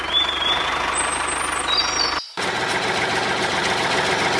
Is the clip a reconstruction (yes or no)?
no